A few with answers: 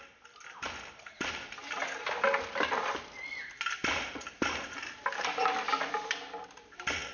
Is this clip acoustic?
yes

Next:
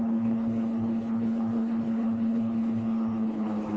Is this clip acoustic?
no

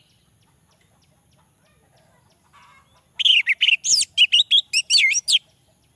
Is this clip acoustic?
yes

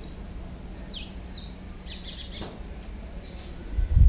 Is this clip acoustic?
yes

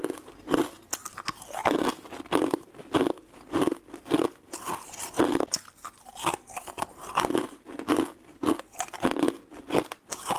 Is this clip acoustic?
yes